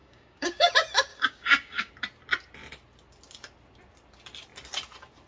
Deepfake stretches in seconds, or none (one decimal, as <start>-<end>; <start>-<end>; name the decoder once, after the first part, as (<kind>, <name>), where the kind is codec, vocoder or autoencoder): 0.0-0.7 (codec, DAC); 1.1-1.9

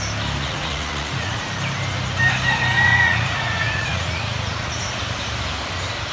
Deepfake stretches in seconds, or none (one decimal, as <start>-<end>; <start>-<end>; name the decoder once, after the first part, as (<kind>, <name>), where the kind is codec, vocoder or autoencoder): 0.4-1.5 (vocoder, Vocos); 2.9-4.8

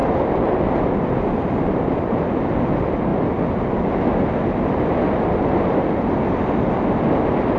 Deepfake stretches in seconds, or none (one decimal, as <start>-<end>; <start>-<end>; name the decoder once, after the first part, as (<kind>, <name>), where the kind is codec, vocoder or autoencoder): none

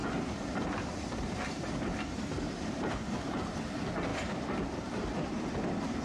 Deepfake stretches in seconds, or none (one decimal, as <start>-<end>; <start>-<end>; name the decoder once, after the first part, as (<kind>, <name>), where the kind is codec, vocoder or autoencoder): none

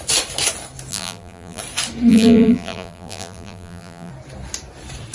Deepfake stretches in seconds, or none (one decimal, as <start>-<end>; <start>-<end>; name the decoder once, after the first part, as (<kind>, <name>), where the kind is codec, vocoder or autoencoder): 0.9-1.6 (vocoder, BigVGAN v2); 2.1-4.1

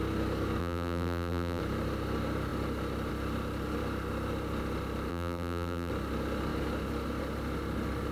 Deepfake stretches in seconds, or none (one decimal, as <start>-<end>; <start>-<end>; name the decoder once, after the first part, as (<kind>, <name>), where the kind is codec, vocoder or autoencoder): 0.6-1.6 (vocoder, BigVGAN v2); 5.1-5.9